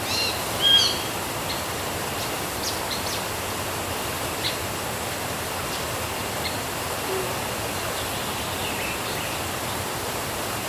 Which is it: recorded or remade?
recorded